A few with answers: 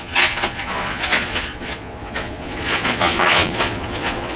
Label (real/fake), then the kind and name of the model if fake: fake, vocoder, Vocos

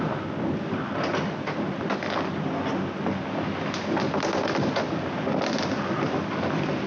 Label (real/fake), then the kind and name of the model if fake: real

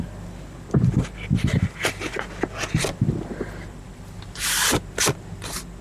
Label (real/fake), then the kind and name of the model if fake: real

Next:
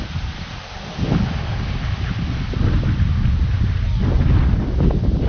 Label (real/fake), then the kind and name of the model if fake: real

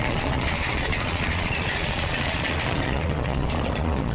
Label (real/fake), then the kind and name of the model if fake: fake, vocoder, Vocos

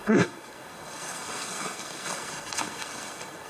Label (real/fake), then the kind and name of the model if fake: fake, codec, SNAC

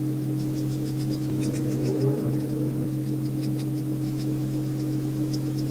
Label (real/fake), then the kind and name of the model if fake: fake, autoencoder, DAC-VAE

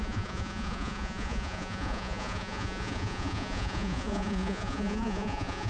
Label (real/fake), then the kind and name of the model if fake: fake, vocoder, Vocos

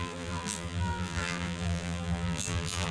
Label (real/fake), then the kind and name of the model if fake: fake, vocoder, BigVGAN v2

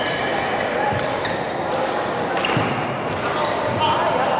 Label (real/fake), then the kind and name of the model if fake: real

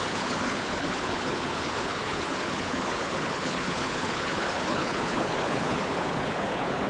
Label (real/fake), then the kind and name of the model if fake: fake, codec, HILCodec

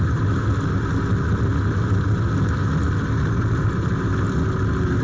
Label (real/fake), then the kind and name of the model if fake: real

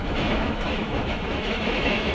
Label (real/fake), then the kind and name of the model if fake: fake, autoencoder, DAC-VAE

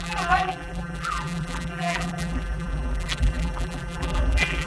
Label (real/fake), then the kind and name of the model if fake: fake, vocoder, BigVGAN v2